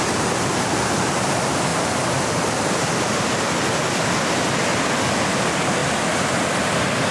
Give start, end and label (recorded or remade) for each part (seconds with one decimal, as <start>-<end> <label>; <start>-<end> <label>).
0.0-1.7 recorded; 1.7-2.9 remade; 2.9-7.1 recorded